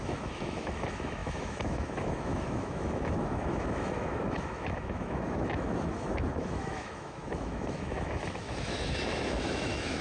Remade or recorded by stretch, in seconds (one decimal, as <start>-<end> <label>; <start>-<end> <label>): 0.0-10.0 remade